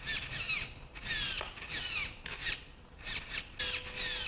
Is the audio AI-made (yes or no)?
no